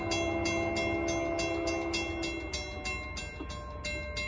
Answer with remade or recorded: recorded